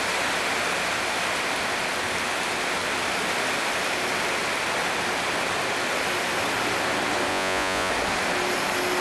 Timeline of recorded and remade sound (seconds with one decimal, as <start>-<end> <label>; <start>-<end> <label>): 0.0-7.3 recorded; 7.3-7.9 remade; 7.9-9.0 recorded